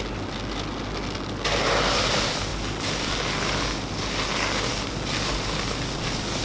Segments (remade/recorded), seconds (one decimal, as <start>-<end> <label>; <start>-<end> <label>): 0.0-6.4 recorded